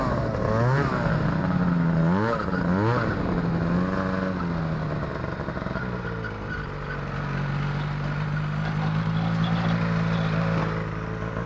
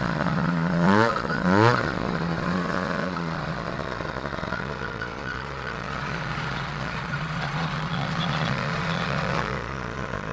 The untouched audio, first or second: first